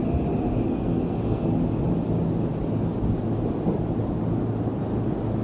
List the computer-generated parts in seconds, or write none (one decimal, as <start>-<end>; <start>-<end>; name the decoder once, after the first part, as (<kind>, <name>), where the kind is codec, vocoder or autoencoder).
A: 0.7-1.5 (codec, SNAC)